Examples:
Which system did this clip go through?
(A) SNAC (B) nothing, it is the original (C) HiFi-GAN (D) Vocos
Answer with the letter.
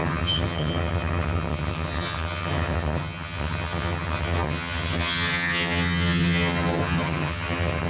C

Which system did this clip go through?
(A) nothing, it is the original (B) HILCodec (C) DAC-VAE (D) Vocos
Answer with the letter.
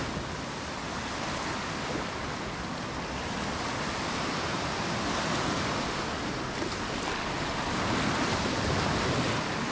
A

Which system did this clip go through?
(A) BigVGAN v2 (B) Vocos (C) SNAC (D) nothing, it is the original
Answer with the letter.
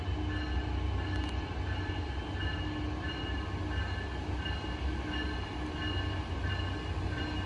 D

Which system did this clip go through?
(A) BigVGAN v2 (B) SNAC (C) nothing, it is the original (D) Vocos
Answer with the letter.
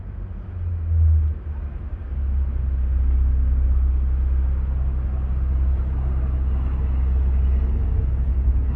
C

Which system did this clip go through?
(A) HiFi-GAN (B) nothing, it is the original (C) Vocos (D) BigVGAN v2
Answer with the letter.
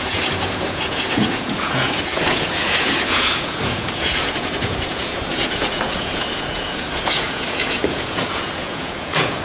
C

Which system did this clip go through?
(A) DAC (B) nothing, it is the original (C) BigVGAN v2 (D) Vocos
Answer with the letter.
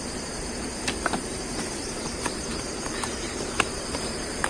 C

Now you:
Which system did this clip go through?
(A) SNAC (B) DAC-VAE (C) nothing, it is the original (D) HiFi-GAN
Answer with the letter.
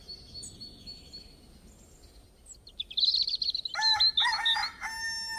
C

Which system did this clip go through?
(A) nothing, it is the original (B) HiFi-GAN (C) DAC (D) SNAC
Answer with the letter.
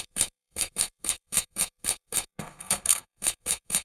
D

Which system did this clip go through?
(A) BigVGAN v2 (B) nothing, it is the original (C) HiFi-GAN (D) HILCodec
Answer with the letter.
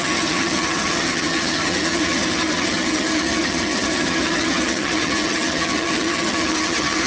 C